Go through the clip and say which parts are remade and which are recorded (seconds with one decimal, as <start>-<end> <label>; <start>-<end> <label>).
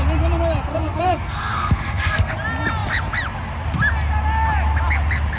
0.0-0.7 recorded; 0.7-2.3 remade; 2.3-5.4 recorded